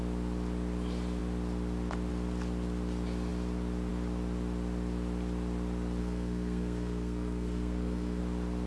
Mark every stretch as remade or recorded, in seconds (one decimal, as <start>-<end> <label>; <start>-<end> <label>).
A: 0.0-6.0 recorded; 6.0-8.2 remade; 8.2-8.7 recorded